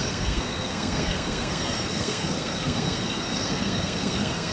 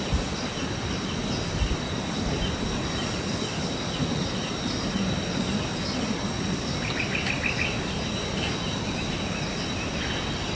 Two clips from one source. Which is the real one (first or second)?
second